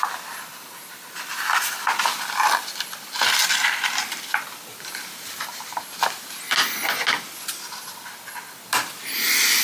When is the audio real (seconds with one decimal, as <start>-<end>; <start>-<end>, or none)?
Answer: 0.0-0.5; 5.8-9.6